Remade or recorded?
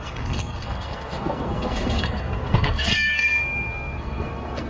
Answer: remade